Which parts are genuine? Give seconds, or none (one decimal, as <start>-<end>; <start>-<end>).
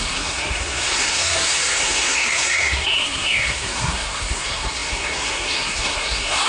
none